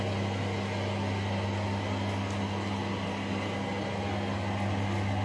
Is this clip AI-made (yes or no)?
no